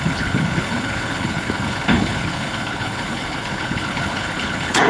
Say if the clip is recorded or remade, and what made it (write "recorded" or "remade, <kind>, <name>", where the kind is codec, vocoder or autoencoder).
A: remade, codec, HILCodec